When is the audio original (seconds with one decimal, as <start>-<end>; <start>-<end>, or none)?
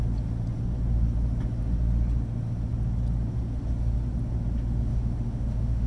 0.0-4.9